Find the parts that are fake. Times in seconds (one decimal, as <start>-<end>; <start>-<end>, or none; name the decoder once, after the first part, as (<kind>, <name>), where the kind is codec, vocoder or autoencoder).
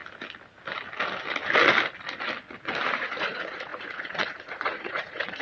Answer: 2.9-5.4 (vocoder, Vocos)